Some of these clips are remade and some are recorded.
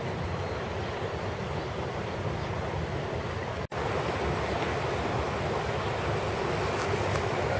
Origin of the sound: recorded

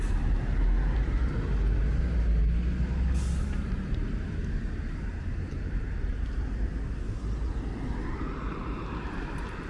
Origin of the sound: recorded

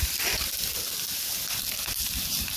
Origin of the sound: recorded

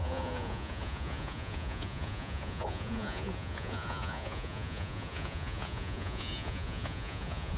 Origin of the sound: remade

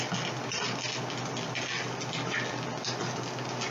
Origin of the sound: recorded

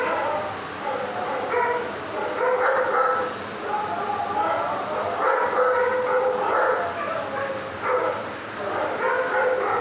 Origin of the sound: recorded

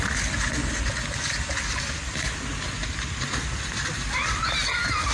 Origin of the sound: recorded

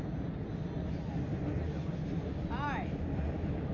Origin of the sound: recorded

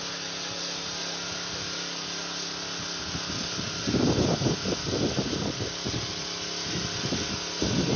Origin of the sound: recorded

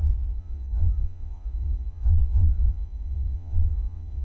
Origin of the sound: remade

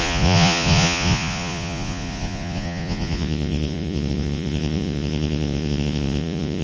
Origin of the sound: remade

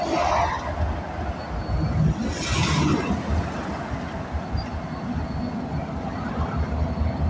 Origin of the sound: recorded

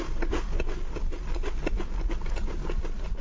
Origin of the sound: recorded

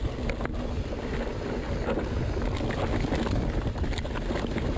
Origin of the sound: recorded